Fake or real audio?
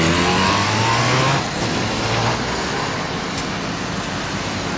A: real